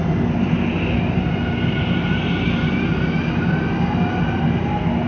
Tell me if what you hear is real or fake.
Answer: real